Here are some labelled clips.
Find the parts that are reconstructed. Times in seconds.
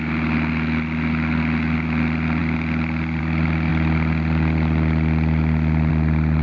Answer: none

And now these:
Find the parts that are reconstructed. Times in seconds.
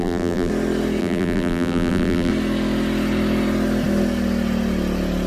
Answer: 0.0-0.5 (vocoder, BigVGAN v2); 1.0-2.3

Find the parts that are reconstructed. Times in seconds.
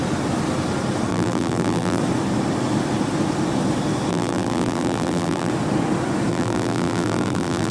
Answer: 1.1-2.0 (vocoder, BigVGAN v2); 4.1-5.5; 6.3-7.7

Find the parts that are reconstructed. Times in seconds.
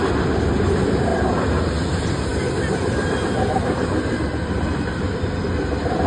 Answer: none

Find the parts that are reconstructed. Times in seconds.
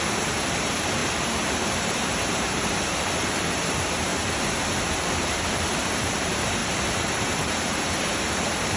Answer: 0.0-1.0 (vocoder, BigVGAN v2); 1.9-4.1; 4.9-8.8